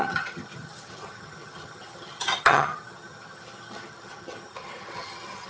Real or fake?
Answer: fake